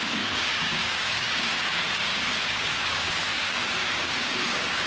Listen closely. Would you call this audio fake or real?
fake